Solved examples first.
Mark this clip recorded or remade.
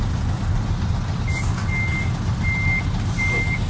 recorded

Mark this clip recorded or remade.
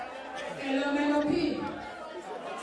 recorded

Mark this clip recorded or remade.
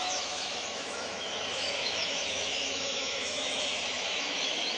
remade